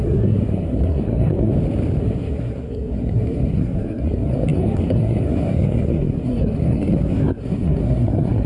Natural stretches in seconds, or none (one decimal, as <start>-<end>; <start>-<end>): 1.5-2.0